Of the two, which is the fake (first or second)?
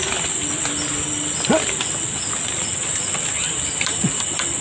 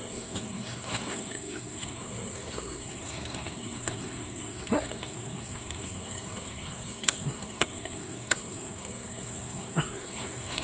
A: second